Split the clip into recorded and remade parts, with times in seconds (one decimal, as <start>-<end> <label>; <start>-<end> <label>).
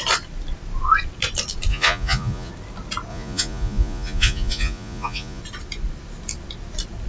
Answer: 0.0-1.7 recorded; 1.7-2.5 remade; 2.5-3.1 recorded; 3.1-5.4 remade; 5.4-7.1 recorded